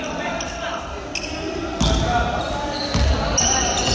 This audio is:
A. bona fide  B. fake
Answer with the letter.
A